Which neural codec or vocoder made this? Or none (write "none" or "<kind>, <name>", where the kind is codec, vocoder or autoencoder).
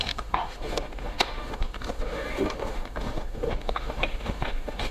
autoencoder, DAC-VAE